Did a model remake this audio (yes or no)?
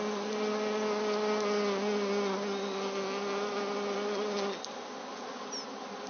no